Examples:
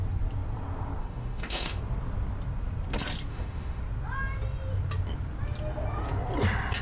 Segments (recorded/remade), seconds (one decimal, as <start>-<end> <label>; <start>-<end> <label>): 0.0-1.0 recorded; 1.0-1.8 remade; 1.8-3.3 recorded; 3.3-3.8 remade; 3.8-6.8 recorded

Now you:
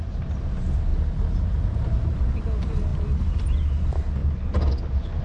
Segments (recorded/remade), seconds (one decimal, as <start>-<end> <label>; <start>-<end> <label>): 0.0-5.2 recorded

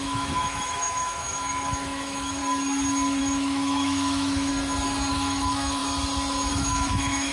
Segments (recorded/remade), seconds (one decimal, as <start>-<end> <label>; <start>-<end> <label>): 0.0-2.4 remade; 2.4-3.2 recorded; 3.2-4.5 remade; 4.5-5.1 recorded; 5.1-5.8 remade; 5.8-6.5 recorded; 6.5-7.3 remade

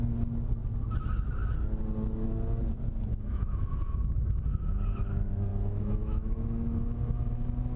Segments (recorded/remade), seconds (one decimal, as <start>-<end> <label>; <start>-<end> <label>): 0.0-3.1 recorded; 3.1-4.8 remade; 4.8-5.5 recorded; 5.5-7.3 remade; 7.3-7.8 recorded